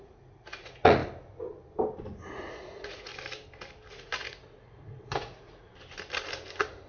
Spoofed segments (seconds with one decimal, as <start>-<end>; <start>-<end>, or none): 0.0-1.0; 2.6-3.1; 3.9-5.7